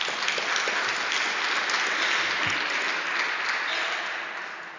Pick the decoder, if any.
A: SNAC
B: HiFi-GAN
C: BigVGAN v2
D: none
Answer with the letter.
D